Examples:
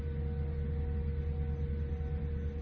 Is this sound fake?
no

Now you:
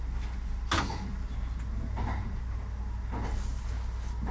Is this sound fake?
no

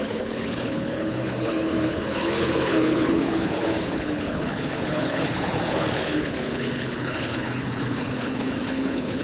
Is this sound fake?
yes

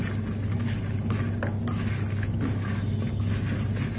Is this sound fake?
no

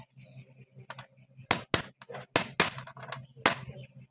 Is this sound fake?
no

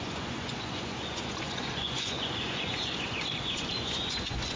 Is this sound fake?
yes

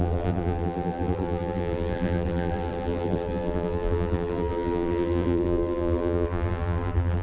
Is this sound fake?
yes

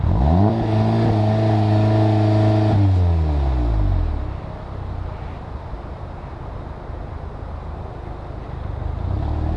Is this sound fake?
no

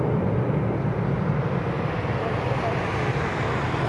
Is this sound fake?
no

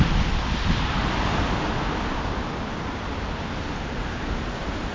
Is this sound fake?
no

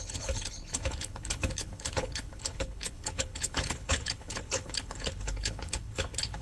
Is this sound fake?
yes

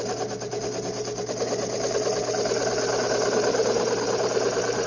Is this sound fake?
no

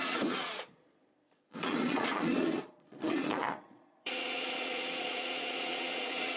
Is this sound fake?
yes